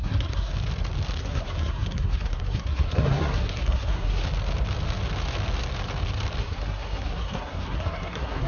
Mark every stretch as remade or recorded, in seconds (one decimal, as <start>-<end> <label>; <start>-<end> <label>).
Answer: 0.0-0.5 remade; 0.5-1.2 recorded; 1.2-4.2 remade; 4.2-6.4 recorded; 6.4-8.5 remade